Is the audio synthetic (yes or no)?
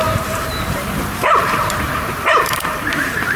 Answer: yes